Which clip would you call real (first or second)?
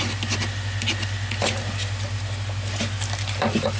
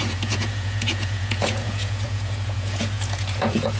first